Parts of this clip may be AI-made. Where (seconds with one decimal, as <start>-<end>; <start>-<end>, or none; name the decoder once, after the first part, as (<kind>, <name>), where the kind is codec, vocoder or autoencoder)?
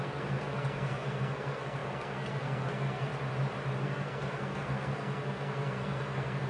0.0-3.1 (codec, SNAC); 3.8-6.5